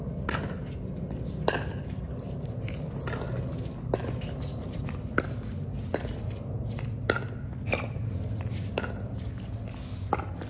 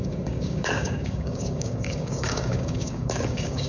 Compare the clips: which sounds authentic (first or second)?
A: first